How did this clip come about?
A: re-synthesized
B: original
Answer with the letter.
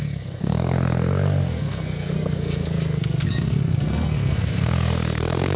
A